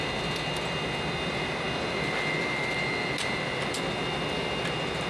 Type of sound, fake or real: real